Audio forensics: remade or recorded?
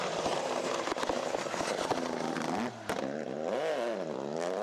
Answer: recorded